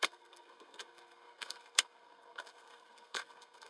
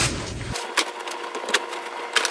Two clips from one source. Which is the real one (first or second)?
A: second